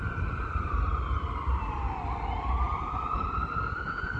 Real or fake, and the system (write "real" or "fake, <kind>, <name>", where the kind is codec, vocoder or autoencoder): real